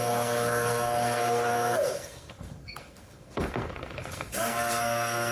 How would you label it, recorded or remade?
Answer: remade